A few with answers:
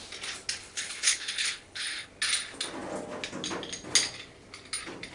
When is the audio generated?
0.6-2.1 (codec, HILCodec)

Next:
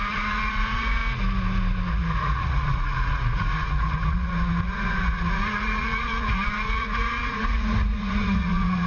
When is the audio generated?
0.0-1.0 (vocoder, Vocos); 1.9-8.9

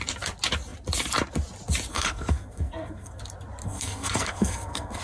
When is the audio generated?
1.9-3.2 (codec, SNAC); 3.6-5.0

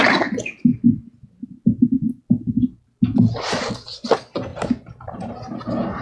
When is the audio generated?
4.5-5.3 (vocoder, BigVGAN v2)

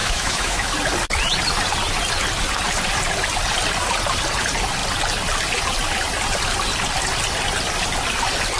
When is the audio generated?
0.0-0.7 (autoencoder, DAC-VAE)

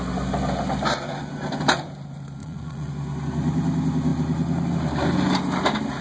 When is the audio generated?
2.4-2.9 (vocoder, Vocos)